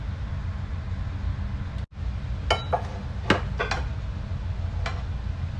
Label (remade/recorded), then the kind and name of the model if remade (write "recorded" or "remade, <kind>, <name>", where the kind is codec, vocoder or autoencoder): recorded